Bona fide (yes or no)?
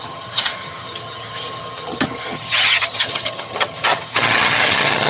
no